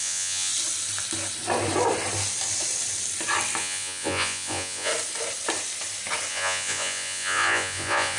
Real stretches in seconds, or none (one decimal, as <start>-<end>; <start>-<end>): 0.5-3.6; 4.9-6.3